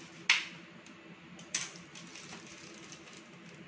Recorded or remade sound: recorded